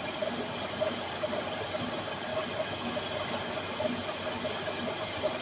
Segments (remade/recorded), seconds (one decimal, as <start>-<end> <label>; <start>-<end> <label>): 0.0-2.3 remade; 2.3-4.9 recorded; 4.9-5.4 remade